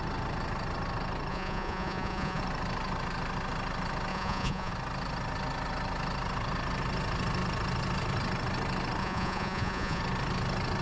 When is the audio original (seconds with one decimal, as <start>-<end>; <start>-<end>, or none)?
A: 0.0-1.3; 2.4-4.1; 4.7-9.0; 10.0-10.8